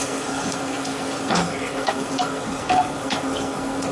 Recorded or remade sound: remade